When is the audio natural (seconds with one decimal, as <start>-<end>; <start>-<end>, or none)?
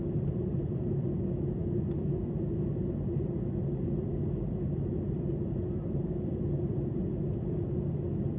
0.0-8.4